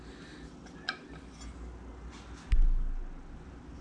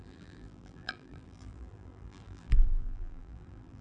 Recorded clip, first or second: first